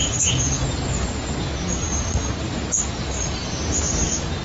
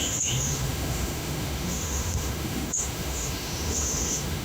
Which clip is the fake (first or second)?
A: second